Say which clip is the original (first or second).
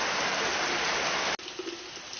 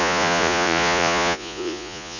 first